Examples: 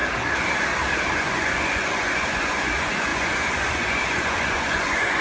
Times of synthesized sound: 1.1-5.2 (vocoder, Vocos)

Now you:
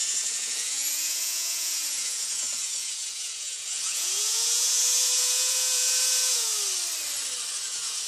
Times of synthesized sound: 0.0-6.5 (vocoder, Vocos); 7.5-8.1

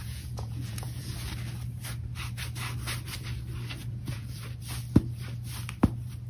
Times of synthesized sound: 0.0-1.1 (vocoder, Vocos); 3.8-4.4

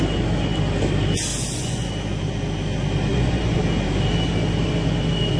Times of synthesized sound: 1.3-1.9 (vocoder, Vocos); 3.1-3.6

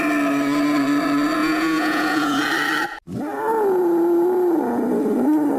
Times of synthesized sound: 1.4-2.4 (vocoder, Vocos)

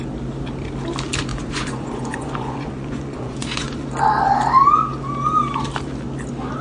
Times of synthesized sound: 1.3-3.9 (vocoder, Vocos)

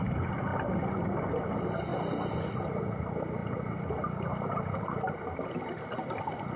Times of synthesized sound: none